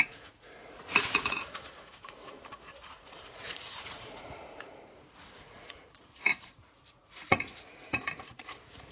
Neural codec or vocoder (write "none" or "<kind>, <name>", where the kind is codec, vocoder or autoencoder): vocoder, Vocos